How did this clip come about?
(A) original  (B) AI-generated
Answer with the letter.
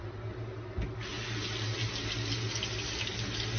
A